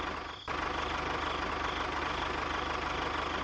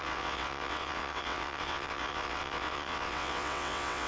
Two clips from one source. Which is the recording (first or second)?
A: first